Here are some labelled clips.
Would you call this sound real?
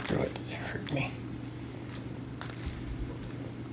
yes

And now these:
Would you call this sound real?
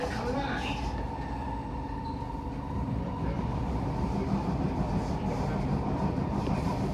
yes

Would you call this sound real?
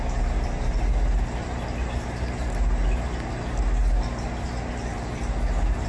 yes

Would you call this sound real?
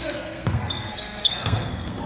no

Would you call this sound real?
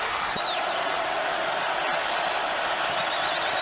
yes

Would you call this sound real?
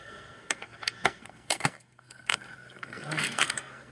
no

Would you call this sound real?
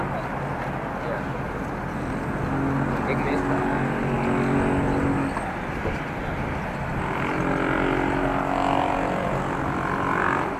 yes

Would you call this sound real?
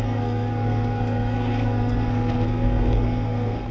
no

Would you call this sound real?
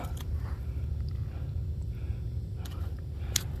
yes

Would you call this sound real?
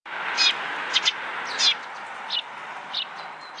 yes